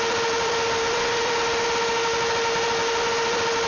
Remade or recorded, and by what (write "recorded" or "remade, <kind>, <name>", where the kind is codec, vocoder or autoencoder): remade, vocoder, BigVGAN v2